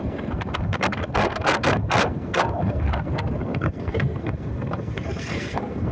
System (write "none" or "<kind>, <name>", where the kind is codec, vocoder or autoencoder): codec, SNAC